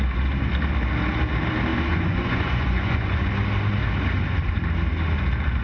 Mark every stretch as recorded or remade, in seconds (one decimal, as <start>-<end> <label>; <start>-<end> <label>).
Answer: 0.0-1.7 recorded; 1.7-3.3 remade; 3.3-5.6 recorded